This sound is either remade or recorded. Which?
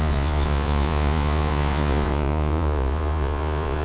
remade